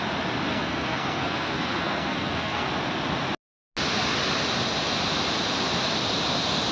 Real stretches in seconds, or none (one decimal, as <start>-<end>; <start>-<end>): 0.0-0.5; 2.7-6.7